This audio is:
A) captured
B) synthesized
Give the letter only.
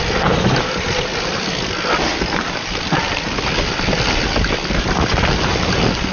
A